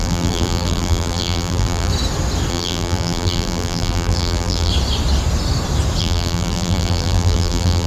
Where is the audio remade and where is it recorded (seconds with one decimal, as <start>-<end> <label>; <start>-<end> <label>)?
0.0-1.9 remade; 1.9-2.5 recorded; 2.5-4.7 remade; 4.7-6.0 recorded; 6.0-7.9 remade